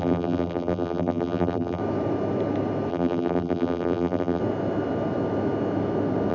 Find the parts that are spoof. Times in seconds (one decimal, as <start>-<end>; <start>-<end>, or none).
0.0-1.8; 2.9-4.4